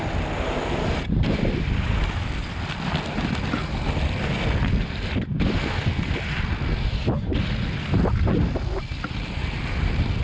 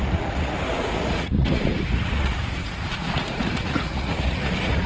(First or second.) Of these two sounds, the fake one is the second